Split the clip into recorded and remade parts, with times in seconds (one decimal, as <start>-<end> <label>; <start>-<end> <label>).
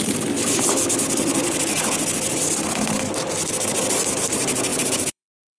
0.0-4.7 recorded; 4.7-5.6 remade